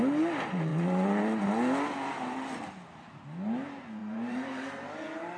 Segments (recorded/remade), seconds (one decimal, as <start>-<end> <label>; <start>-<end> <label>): 0.0-4.0 recorded; 4.0-5.4 remade